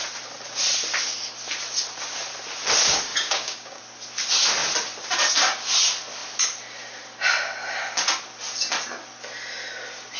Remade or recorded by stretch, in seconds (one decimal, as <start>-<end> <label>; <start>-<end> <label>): 0.0-3.1 recorded; 3.1-3.8 remade; 3.8-10.2 recorded